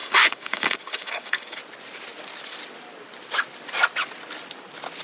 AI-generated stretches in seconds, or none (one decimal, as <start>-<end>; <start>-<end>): 0.0-1.6